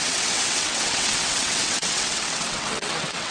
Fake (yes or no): yes